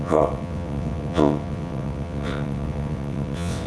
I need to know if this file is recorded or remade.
remade